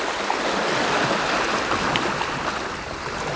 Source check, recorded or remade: recorded